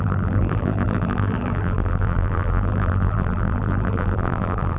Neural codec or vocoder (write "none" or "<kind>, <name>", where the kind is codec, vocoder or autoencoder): vocoder, BigVGAN v2